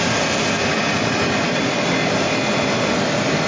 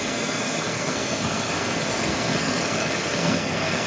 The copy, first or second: second